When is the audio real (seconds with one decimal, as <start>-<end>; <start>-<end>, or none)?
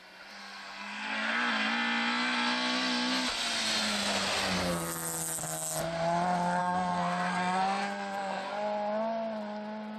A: 0.0-0.4; 1.3-6.6; 8.5-10.0